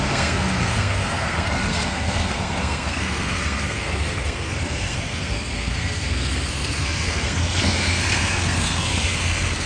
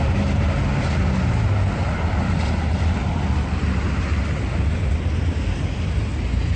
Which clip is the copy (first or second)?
first